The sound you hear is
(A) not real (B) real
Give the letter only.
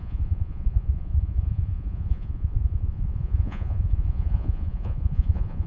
A